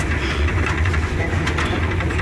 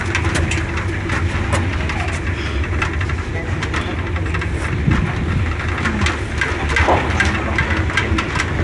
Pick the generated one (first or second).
first